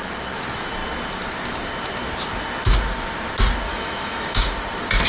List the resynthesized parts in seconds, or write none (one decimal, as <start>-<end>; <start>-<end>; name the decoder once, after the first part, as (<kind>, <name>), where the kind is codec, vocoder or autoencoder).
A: 3.7-4.5 (autoencoder, DAC-VAE)

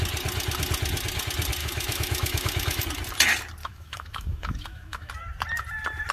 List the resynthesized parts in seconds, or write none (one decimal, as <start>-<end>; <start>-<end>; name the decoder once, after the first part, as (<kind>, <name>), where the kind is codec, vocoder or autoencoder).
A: 1.6-2.8 (autoencoder, DAC-VAE); 3.6-5.1

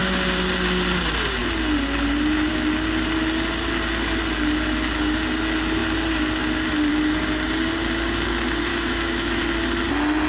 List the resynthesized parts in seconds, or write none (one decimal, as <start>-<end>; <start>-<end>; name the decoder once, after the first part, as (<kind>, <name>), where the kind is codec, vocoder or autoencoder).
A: 8.7-9.4 (autoencoder, DAC-VAE)

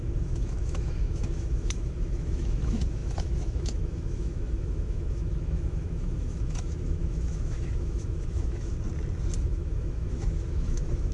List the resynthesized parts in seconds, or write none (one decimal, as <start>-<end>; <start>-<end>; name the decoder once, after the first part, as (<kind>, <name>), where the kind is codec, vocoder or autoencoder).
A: 0.0-8.7 (autoencoder, DAC-VAE); 9.4-11.1

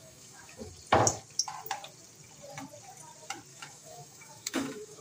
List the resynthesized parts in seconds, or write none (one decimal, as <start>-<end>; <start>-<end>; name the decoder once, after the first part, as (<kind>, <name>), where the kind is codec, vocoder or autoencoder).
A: 0.0-0.7 (autoencoder, DAC-VAE); 3.5-5.0

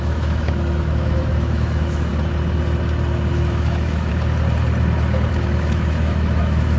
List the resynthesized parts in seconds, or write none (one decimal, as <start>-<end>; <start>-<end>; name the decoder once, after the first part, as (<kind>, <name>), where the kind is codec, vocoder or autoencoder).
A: 0.0-2.1 (autoencoder, DAC-VAE); 3.3-4.1; 5.3-6.8

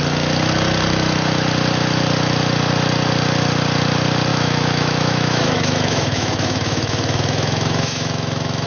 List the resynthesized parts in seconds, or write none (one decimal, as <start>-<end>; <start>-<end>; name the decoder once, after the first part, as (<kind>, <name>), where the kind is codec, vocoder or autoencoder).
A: 4.3-8.7 (autoencoder, DAC-VAE)

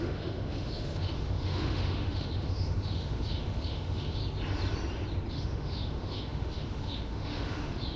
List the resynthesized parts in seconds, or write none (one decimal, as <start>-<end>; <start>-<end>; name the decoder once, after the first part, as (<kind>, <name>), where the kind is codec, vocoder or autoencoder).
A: 0.0-4.2 (autoencoder, DAC-VAE); 5.3-8.0